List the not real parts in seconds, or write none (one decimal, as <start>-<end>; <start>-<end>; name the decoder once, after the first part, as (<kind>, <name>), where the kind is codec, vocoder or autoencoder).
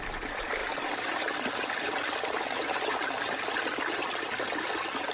none